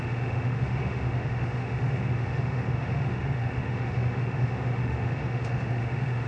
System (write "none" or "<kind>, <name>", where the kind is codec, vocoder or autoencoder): autoencoder, DAC-VAE